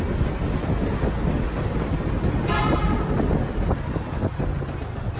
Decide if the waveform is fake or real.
real